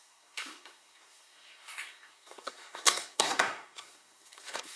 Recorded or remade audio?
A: remade